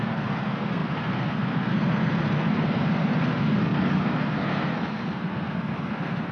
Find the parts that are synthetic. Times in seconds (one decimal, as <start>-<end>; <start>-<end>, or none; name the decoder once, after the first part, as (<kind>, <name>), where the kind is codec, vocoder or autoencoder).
0.0-6.3 (codec, SNAC)